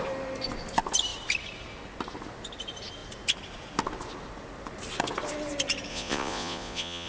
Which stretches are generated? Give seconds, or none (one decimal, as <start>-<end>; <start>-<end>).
5.9-7.1